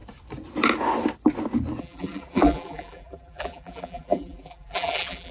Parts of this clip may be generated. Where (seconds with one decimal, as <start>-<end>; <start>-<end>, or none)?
1.8-5.3